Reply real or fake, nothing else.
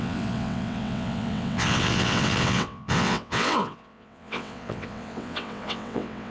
fake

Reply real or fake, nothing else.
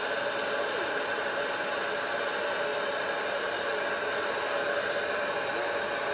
real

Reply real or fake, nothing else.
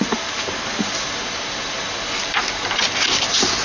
real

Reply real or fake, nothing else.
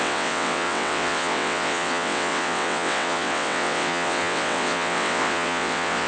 fake